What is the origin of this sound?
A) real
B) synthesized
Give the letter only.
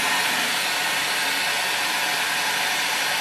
A